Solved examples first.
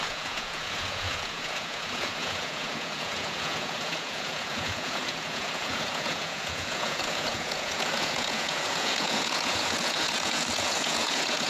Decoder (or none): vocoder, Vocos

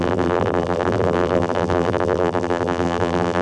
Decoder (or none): vocoder, BigVGAN v2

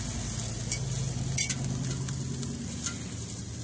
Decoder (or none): none